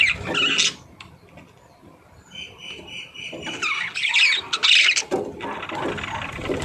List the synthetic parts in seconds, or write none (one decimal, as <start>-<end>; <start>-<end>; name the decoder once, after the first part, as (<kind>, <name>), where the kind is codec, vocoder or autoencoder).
2.6-3.4 (vocoder, BigVGAN v2); 4.6-5.4